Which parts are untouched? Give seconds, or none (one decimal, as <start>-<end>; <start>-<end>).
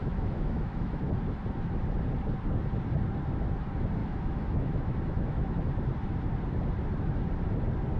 1.0-4.0; 5.7-8.0